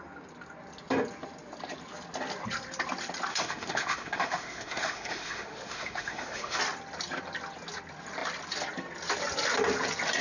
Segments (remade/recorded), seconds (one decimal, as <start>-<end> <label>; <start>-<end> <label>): 0.0-3.3 recorded; 3.3-6.6 remade; 6.6-10.2 recorded